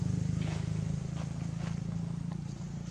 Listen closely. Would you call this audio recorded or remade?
recorded